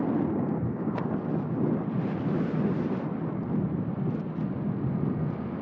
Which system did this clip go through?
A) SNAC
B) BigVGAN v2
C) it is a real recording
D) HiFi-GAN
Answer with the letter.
C